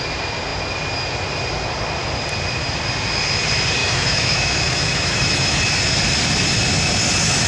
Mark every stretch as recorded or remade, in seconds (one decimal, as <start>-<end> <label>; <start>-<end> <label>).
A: 0.0-3.8 recorded; 3.8-5.6 remade; 5.6-7.5 recorded